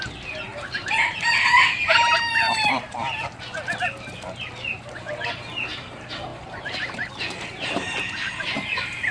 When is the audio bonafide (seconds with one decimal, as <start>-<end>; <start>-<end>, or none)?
0.0-0.5; 1.3-6.3; 7.1-9.1